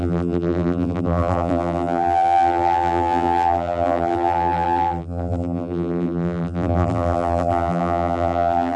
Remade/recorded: remade